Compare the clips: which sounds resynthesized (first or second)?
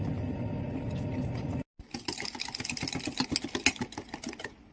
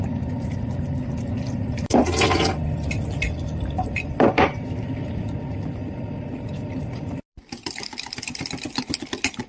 second